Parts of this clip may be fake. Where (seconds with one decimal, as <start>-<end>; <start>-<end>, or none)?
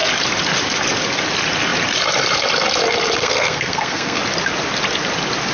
3.2-4.2